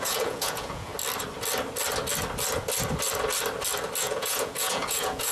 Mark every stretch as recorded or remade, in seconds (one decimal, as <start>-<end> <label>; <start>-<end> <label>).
0.0-0.9 remade; 0.9-4.0 recorded; 4.0-5.3 remade